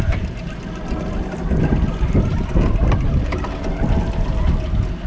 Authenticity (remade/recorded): recorded